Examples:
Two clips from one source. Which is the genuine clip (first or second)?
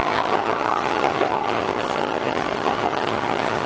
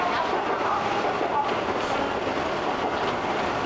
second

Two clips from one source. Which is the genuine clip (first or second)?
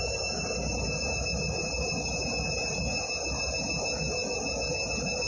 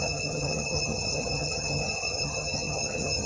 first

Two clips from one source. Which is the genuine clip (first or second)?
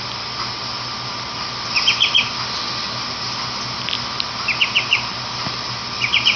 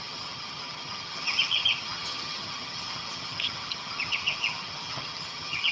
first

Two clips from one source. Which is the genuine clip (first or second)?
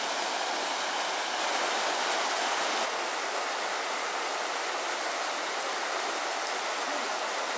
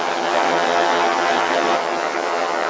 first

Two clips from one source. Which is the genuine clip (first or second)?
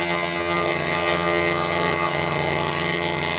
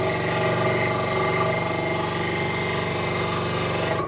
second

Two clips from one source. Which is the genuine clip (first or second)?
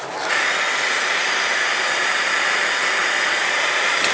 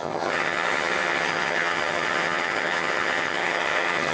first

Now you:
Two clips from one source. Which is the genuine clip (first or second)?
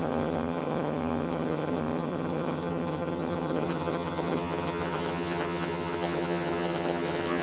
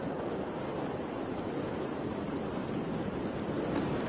second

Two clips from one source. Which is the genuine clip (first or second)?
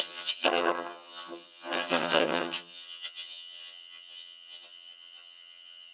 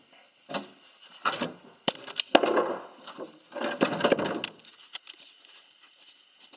second